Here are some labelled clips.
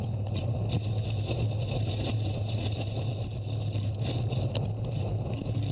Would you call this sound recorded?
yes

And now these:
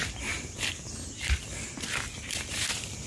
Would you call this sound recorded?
yes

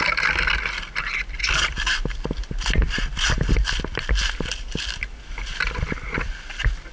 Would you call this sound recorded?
yes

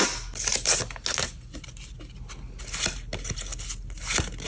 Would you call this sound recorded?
yes